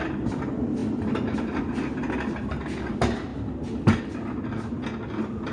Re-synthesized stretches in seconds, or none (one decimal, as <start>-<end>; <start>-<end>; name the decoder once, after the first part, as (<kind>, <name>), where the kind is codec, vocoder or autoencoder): none